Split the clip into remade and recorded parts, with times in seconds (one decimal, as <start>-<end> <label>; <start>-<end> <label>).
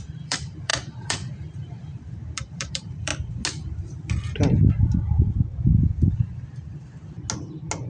0.0-3.1 remade; 3.1-7.9 recorded